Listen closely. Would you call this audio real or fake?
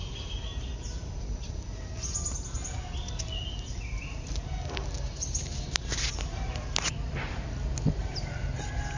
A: real